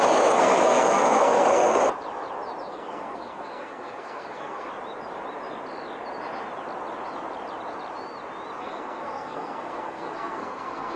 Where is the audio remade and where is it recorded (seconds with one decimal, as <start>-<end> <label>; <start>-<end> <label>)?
0.0-1.8 remade; 1.8-2.7 recorded; 2.7-4.7 remade; 4.7-8.6 recorded; 8.6-11.0 remade